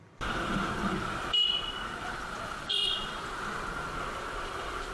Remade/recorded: remade